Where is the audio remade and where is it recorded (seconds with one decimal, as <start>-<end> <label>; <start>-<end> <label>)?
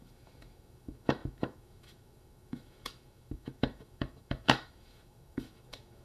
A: 0.0-6.0 remade